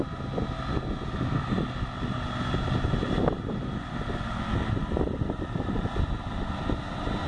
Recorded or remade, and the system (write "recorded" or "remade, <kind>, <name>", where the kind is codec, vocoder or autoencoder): recorded